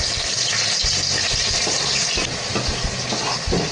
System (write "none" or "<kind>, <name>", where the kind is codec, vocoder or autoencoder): none